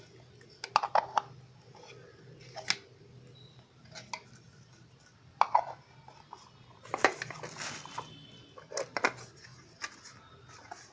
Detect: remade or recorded recorded